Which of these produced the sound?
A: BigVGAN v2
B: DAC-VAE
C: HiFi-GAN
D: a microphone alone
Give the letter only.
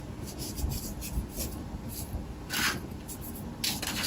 D